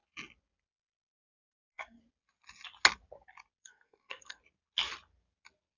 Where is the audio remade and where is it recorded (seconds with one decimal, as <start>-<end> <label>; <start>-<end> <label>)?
0.0-1.1 recorded; 1.1-2.0 remade; 2.0-3.6 recorded; 3.6-4.4 remade; 4.4-5.8 recorded